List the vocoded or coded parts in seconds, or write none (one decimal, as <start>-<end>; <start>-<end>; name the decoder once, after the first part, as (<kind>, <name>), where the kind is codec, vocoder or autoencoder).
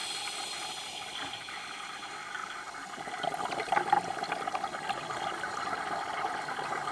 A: none